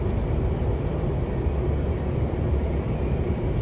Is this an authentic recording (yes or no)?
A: yes